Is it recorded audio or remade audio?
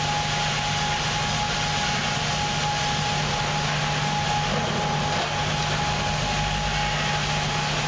recorded